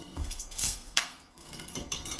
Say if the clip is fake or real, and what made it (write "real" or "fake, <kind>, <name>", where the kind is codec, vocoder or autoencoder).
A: fake, codec, SNAC